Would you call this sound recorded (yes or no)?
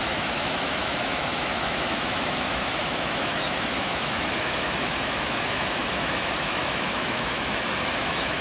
no